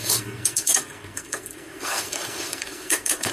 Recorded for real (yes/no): no